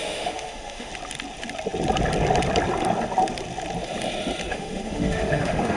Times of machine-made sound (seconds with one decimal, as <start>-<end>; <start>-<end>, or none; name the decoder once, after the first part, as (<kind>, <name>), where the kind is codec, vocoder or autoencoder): 0.0-0.9 (autoencoder, DAC-VAE); 4.5-5.8